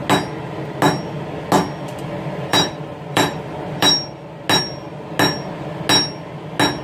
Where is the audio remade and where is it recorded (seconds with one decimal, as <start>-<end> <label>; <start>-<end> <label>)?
0.0-2.5 recorded; 2.5-3.9 remade; 3.9-6.8 recorded